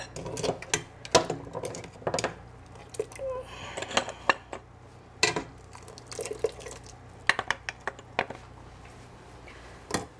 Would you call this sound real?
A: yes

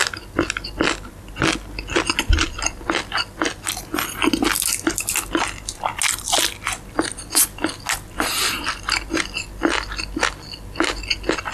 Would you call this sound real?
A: yes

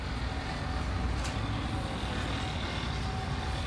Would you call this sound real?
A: yes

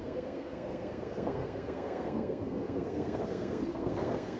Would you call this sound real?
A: no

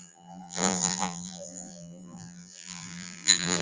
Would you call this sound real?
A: no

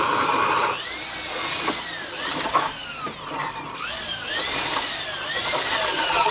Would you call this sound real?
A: yes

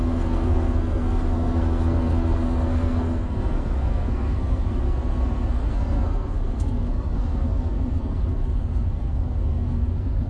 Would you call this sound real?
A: no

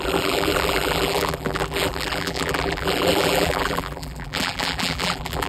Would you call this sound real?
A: no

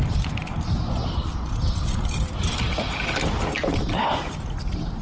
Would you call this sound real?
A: yes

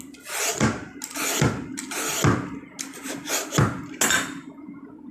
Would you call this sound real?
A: yes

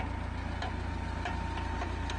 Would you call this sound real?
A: yes